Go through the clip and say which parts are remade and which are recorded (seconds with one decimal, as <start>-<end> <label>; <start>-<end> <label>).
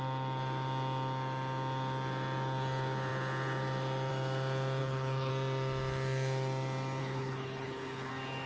0.0-4.8 recorded; 4.8-5.3 remade; 5.3-7.0 recorded; 7.0-8.1 remade; 8.1-8.5 recorded